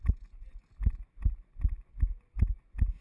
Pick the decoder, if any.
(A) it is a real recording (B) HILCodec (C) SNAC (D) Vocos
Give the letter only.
A